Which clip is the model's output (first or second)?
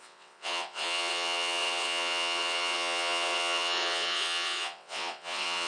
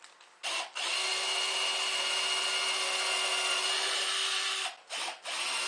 first